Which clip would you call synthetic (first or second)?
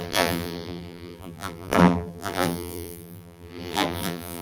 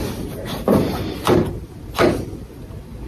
first